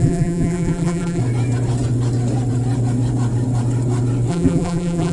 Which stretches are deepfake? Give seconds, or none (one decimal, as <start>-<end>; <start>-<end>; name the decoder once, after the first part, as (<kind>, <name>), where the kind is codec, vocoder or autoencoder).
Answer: 0.0-1.2 (vocoder, BigVGAN v2); 4.3-5.1